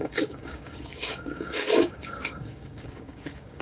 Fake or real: fake